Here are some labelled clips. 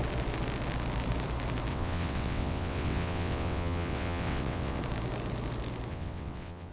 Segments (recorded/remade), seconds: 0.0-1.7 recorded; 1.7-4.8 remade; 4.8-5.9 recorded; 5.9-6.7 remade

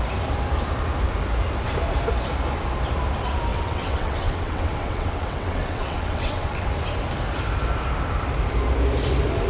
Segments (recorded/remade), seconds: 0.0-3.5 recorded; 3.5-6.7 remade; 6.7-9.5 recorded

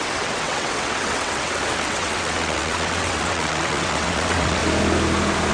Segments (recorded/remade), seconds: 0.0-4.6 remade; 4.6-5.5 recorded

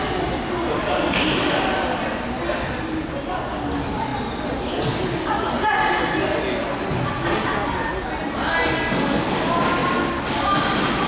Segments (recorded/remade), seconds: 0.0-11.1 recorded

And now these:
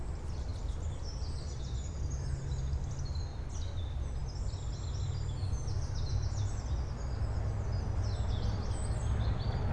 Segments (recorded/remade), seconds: 0.0-9.7 recorded

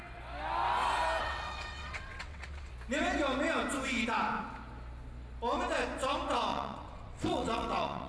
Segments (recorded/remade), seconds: 0.0-1.2 recorded; 1.2-2.7 remade; 2.7-6.5 recorded; 6.5-8.1 remade